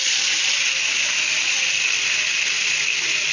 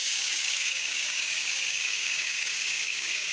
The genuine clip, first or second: first